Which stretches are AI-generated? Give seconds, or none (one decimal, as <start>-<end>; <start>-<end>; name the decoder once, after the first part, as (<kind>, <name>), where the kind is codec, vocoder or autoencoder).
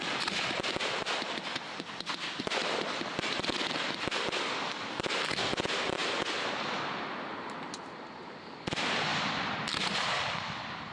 0.0-6.0 (vocoder, BigVGAN v2); 7.8-9.1; 9.8-10.9